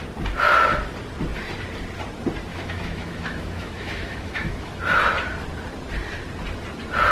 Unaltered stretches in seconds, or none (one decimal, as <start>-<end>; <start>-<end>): 0.0-2.5; 4.8-7.1